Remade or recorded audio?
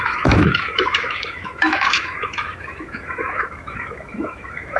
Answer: remade